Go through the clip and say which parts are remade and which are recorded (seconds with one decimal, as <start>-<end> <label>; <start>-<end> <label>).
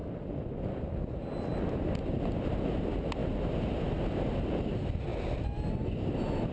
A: 0.0-6.5 recorded